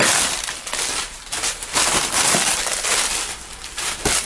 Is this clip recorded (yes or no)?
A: yes